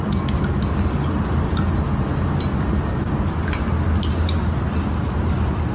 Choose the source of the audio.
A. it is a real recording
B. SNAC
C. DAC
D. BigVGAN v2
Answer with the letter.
A